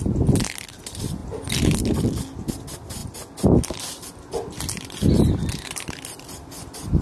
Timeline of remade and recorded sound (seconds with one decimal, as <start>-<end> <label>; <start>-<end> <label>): 0.0-7.0 recorded